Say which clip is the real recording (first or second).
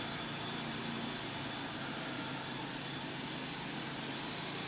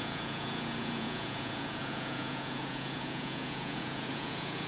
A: first